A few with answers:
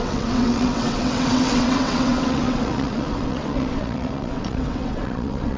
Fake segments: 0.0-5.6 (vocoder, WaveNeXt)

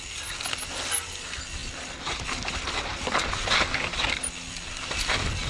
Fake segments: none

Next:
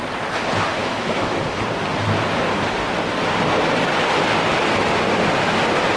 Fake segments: 0.8-1.4 (autoencoder, DAC-VAE)